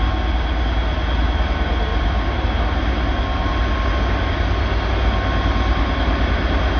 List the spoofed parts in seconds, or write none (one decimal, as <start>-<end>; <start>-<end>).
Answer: 1.9-2.6